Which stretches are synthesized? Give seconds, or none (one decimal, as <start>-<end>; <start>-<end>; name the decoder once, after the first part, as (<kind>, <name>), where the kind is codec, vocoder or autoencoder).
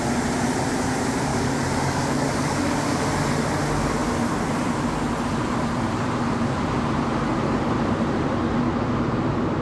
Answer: 1.3-3.0 (codec, DAC)